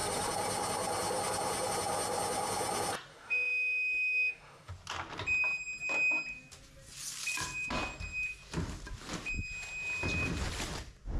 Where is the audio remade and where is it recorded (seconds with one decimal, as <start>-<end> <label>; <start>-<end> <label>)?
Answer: 0.0-3.1 recorded; 3.1-4.7 remade; 4.7-11.2 recorded